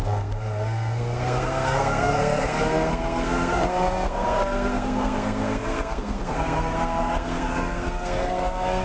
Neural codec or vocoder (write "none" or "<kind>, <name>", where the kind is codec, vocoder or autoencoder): codec, SNAC